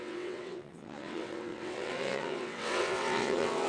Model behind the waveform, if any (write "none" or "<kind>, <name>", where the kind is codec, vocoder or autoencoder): vocoder, WaveNeXt